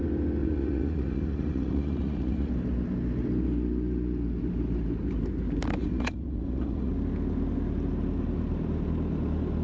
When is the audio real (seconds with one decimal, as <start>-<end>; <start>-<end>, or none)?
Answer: 0.0-0.4; 2.5-5.8; 6.9-9.6